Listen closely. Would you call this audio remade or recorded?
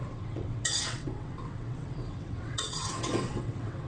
remade